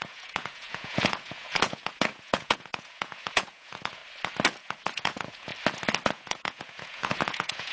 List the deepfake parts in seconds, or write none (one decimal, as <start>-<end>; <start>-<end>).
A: 0.0-4.0; 4.6-5.5; 6.1-7.7